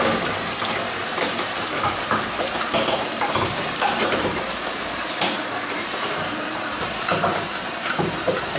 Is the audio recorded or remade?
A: remade